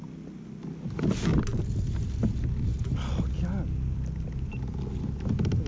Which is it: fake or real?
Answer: real